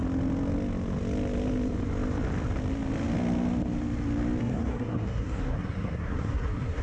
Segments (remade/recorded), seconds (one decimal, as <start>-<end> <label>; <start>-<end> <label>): 0.0-4.4 recorded; 4.4-6.8 remade